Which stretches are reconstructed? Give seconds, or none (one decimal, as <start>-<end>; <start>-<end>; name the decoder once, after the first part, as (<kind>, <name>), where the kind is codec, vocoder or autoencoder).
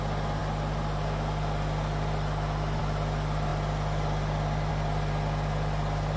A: none